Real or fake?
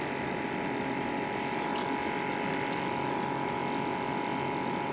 real